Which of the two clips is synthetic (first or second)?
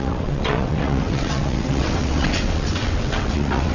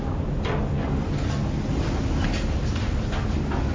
first